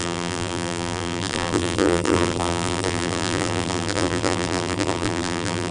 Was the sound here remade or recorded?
remade